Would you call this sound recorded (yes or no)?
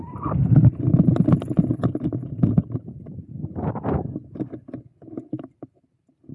yes